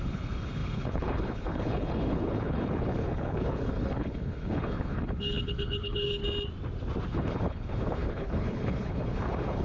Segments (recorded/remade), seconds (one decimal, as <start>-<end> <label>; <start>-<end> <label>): 0.0-6.2 remade; 6.2-7.1 recorded; 7.1-9.6 remade